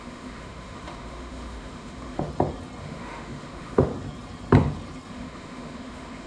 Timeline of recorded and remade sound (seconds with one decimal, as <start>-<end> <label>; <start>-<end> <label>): 0.0-2.3 remade; 2.3-2.8 recorded; 2.8-3.9 remade; 3.9-5.1 recorded; 5.1-6.3 remade